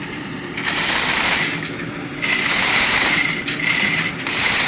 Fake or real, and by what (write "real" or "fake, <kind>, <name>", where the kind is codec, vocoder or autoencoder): fake, vocoder, BigVGAN v2